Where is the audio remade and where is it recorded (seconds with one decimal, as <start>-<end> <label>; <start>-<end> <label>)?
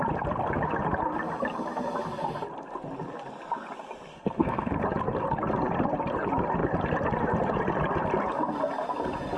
0.0-4.1 recorded; 4.1-4.8 remade; 4.8-9.4 recorded